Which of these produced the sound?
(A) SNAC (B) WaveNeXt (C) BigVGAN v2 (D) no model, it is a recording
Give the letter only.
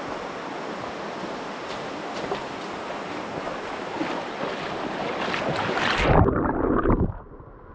D